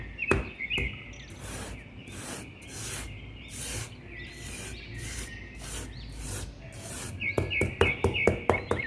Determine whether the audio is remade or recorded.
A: recorded